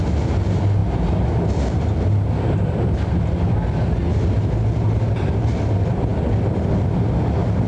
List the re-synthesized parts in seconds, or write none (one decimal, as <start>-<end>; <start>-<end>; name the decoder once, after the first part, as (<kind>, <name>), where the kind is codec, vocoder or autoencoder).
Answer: none